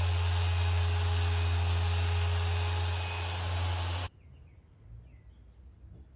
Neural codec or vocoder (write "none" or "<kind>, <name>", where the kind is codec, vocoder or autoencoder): none